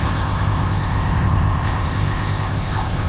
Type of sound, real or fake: fake